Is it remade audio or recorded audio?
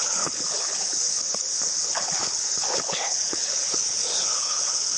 remade